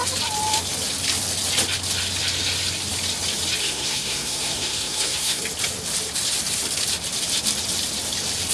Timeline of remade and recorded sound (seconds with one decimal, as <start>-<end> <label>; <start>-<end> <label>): 0.0-3.6 recorded; 3.6-5.4 remade; 5.4-8.5 recorded